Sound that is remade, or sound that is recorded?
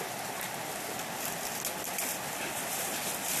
recorded